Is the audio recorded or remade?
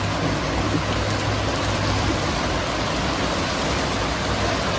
recorded